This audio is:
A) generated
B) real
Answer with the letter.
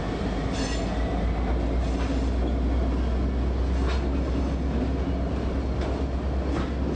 B